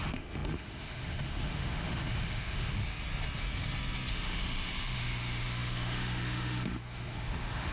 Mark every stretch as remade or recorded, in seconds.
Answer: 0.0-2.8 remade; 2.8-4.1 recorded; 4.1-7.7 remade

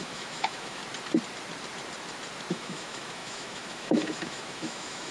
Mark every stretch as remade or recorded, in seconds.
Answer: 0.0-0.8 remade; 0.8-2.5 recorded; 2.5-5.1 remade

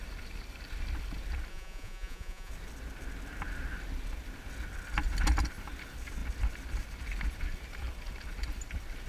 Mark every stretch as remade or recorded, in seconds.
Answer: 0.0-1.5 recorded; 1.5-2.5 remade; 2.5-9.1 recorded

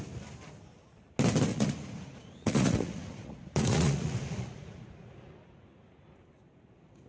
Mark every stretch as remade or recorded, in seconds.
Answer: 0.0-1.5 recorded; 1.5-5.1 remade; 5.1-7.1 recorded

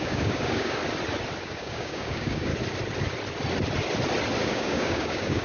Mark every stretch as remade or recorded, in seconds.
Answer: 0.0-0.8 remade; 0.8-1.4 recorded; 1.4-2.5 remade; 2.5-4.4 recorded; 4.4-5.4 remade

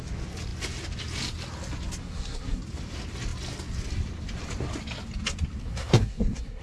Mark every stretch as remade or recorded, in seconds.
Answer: 0.0-2.0 recorded; 2.0-2.6 remade; 2.6-5.6 recorded; 5.6-6.6 remade

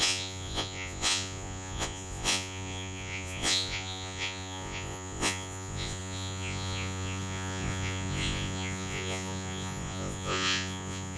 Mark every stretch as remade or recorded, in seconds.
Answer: 0.0-11.2 remade

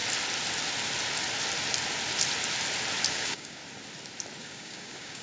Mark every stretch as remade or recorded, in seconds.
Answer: 0.0-3.1 recorded; 3.1-3.6 remade; 3.6-4.4 recorded; 4.4-5.2 remade